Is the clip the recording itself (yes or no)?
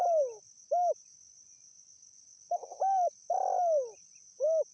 yes